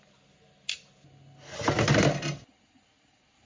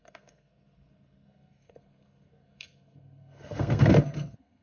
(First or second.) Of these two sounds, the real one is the first